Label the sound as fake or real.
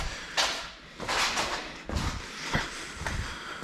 real